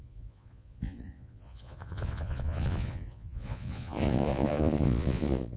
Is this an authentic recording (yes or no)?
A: no